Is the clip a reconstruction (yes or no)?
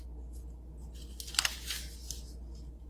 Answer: no